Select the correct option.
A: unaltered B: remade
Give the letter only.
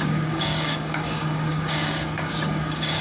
B